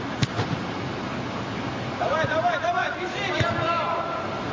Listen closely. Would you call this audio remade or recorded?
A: recorded